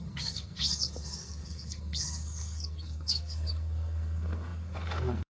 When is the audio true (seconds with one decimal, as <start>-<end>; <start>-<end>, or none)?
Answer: none